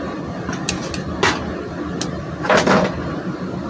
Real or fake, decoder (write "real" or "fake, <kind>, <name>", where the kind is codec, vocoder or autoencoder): real